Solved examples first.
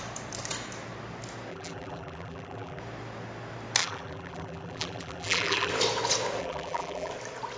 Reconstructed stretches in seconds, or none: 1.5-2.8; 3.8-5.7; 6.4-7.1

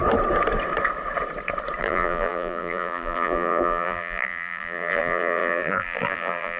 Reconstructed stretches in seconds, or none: 1.8-6.6

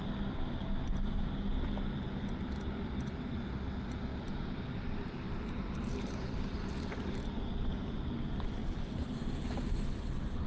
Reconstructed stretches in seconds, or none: 4.1-6.7; 8.6-9.1

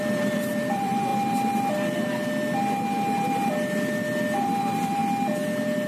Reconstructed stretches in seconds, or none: 0.0-1.1; 4.6-5.0

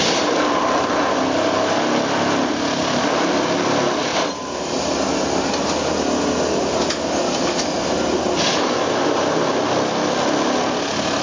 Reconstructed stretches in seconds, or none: 4.1-4.7